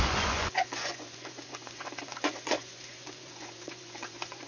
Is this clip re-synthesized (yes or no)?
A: yes